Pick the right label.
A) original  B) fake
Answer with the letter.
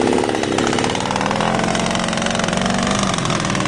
A